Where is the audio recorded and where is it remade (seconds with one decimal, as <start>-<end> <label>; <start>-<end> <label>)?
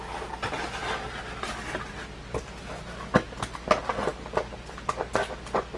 0.0-5.8 recorded